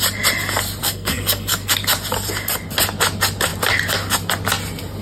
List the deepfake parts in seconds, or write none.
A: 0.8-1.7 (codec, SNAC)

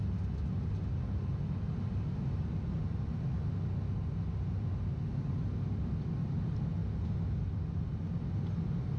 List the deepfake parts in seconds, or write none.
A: none